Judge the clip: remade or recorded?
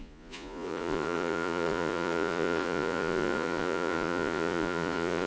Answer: remade